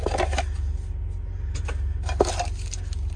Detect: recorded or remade recorded